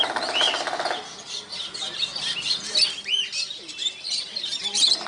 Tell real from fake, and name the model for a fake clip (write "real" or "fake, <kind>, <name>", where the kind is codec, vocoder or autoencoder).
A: real